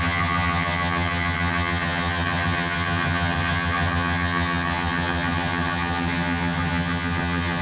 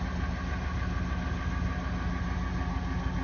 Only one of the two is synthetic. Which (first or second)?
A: first